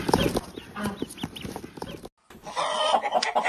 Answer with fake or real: real